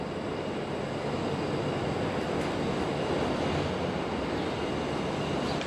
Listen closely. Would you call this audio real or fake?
real